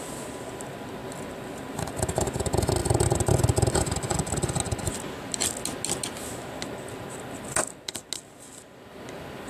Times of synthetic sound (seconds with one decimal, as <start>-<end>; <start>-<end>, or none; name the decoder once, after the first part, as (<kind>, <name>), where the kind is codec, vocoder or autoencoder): none